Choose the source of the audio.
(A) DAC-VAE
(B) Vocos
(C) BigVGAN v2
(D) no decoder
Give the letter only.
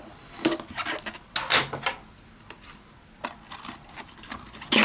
D